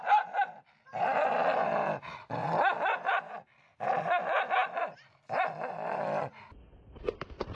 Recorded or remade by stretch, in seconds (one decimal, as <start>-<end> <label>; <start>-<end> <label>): 0.0-2.4 recorded; 2.4-3.2 remade; 3.2-4.6 recorded; 4.6-6.0 remade; 6.0-7.5 recorded

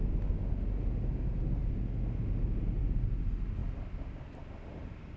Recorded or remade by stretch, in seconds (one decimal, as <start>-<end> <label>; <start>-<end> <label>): 0.0-5.2 recorded

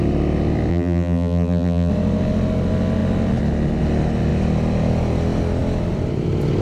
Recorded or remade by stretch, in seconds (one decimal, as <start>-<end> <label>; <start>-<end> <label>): 0.0-0.7 recorded; 0.7-1.9 remade; 1.9-6.6 recorded

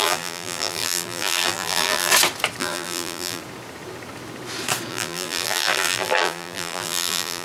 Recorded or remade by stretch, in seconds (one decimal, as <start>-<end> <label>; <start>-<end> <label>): 0.0-2.1 remade; 2.1-2.6 recorded; 2.6-3.4 remade; 3.4-4.9 recorded; 4.9-7.4 remade

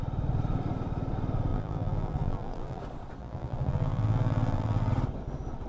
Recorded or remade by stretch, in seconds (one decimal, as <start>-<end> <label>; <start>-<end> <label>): 0.0-1.5 recorded; 1.5-2.8 remade; 2.8-3.2 recorded; 3.2-4.9 remade; 4.9-5.7 recorded

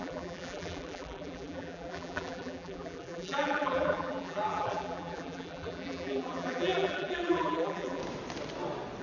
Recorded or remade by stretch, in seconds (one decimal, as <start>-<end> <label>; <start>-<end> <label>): 0.0-8.0 remade; 8.0-9.0 recorded

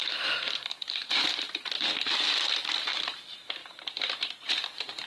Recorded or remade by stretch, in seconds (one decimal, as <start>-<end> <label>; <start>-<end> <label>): 0.0-2.9 remade; 2.9-3.6 recorded; 3.6-5.1 remade